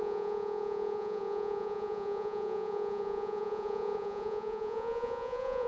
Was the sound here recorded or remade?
remade